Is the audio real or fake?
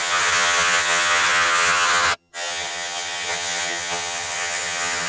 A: fake